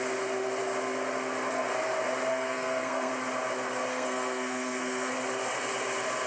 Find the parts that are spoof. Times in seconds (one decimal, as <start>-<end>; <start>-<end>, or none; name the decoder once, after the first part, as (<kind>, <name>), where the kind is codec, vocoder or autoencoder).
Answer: 2.3-3.1 (codec, SNAC); 3.9-5.1